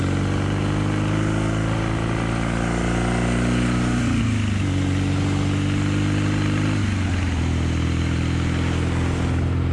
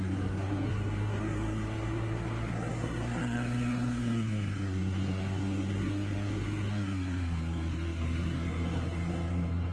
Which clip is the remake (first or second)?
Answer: second